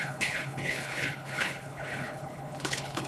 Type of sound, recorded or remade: remade